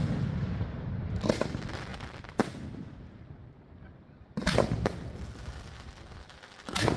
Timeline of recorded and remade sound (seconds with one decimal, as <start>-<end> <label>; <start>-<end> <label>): 0.0-7.0 recorded